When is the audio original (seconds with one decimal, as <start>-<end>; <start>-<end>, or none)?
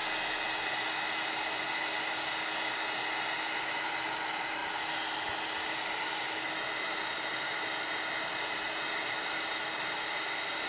0.0-10.7